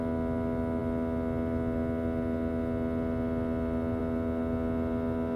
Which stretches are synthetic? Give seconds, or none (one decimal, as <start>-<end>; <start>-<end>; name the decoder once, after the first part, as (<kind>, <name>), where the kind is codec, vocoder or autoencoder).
none